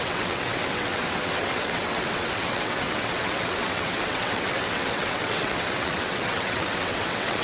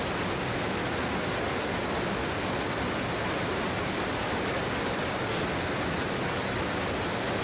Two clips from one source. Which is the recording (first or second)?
second